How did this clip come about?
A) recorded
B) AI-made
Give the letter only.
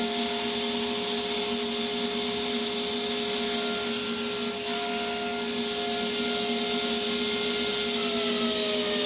A